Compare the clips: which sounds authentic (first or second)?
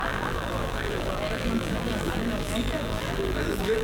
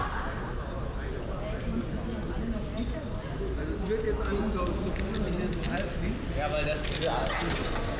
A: second